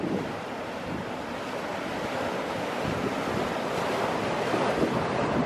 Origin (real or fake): real